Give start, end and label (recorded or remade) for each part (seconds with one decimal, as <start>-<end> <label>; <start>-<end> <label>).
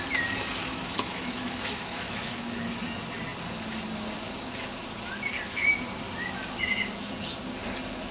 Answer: 0.0-0.6 recorded; 0.6-2.8 remade; 2.8-8.1 recorded